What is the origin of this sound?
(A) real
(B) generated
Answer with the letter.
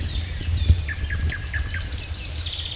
A